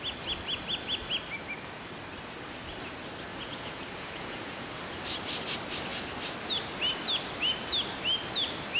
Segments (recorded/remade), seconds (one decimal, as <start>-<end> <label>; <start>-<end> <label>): 0.0-3.3 recorded; 3.3-4.8 remade; 4.8-8.8 recorded